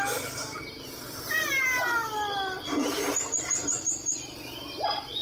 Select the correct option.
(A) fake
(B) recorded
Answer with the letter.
B